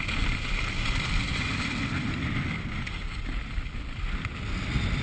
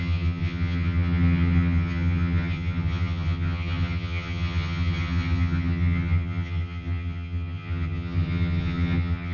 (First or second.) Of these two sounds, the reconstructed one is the second